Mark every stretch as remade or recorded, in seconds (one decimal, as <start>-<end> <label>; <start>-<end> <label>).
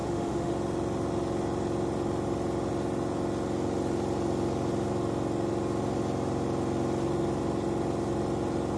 0.0-0.5 remade; 0.5-8.8 recorded